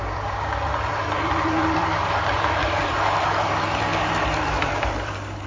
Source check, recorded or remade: remade